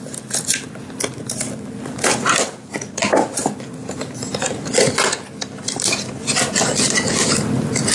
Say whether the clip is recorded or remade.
recorded